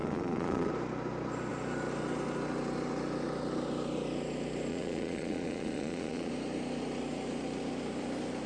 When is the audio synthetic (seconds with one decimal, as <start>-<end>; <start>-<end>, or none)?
0.0-0.7; 4.7-6.3